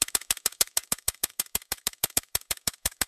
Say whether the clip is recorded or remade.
remade